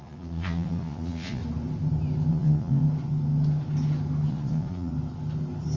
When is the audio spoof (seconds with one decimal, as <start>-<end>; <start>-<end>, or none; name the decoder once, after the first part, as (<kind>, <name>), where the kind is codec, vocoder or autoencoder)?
0.0-1.4 (vocoder, Vocos); 2.3-2.8; 4.3-4.9